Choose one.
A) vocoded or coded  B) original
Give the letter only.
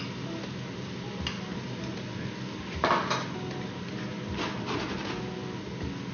B